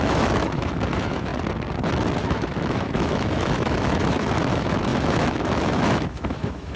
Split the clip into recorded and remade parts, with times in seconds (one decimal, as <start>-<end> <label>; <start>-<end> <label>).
0.0-1.3 remade; 1.3-2.2 recorded; 2.2-6.8 remade